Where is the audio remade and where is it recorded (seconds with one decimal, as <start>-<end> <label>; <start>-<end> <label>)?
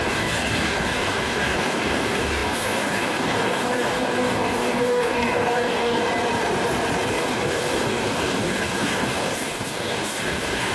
0.0-6.0 remade; 6.0-7.1 recorded; 7.1-10.7 remade